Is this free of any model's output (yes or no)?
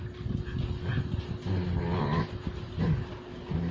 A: yes